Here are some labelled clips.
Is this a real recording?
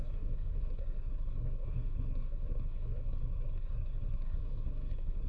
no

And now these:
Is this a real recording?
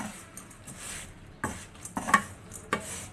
yes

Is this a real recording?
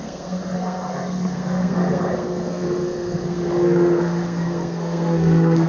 no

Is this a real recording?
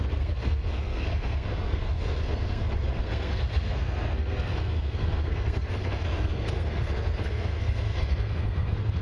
no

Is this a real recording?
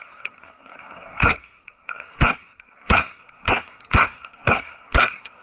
no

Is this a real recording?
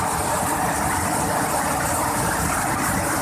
yes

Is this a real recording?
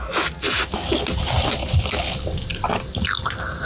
yes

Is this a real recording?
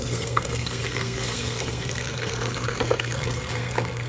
no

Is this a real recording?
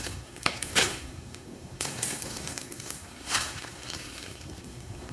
no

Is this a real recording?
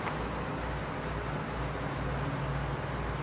yes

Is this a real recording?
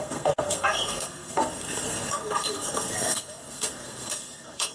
no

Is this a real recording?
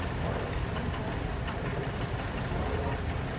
yes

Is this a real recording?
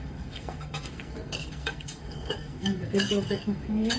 no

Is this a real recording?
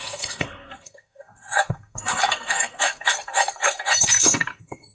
no